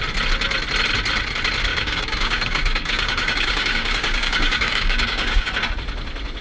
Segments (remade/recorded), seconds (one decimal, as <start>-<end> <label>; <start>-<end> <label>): 0.0-1.7 recorded; 1.7-5.5 remade; 5.5-6.4 recorded